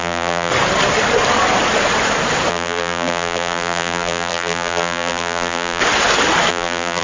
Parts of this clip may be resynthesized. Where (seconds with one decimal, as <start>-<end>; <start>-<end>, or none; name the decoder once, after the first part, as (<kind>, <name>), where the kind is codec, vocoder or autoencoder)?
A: 0.0-0.5 (vocoder, BigVGAN v2); 2.5-5.8; 6.5-7.0